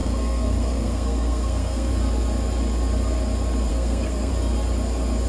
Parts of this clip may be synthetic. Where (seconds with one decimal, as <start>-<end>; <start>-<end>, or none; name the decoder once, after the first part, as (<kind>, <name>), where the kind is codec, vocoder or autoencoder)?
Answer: 0.0-1.9 (codec, SNAC); 3.7-4.3